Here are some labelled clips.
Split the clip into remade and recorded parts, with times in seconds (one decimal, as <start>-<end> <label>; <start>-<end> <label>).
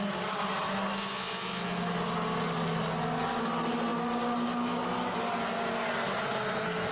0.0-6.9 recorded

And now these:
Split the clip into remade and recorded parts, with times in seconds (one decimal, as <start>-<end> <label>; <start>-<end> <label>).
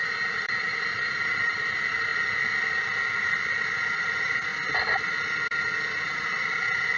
0.0-2.1 remade; 2.1-2.7 recorded; 2.7-4.5 remade; 4.5-5.9 recorded; 5.9-7.0 remade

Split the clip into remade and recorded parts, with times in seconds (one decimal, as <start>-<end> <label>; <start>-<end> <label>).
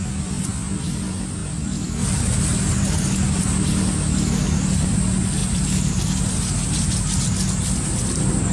0.0-8.5 recorded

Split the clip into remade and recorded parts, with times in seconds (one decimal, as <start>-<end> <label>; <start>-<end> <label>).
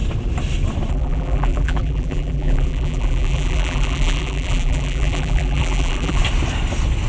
0.0-0.9 recorded; 0.9-6.2 remade; 6.2-7.1 recorded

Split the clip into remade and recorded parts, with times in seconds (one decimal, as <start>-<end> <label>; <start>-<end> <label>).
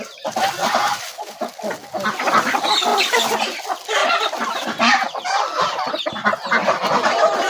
0.0-0.6 recorded; 0.6-1.5 remade; 1.5-2.9 recorded; 2.9-3.4 remade; 3.4-4.0 recorded; 4.0-5.9 remade; 5.9-7.5 recorded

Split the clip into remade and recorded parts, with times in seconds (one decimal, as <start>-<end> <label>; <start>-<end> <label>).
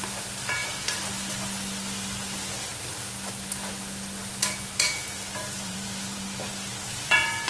0.0-5.4 recorded; 5.4-6.5 remade; 6.5-6.9 recorded; 6.9-7.5 remade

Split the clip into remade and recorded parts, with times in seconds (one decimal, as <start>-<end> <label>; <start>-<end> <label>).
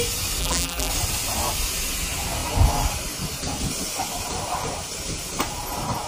0.0-0.4 recorded; 0.4-0.9 remade; 0.9-6.1 recorded